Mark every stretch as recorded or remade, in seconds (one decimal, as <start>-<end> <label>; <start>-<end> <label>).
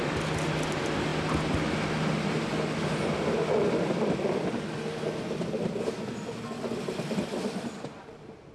0.0-8.5 recorded